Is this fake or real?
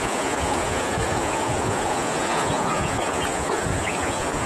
fake